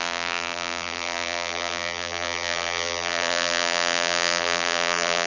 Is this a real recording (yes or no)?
no